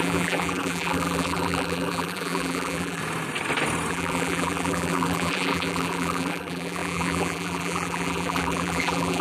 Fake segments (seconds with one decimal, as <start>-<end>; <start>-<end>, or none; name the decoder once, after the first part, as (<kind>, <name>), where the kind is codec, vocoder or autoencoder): 0.0-3.0 (vocoder, BigVGAN v2); 3.9-9.2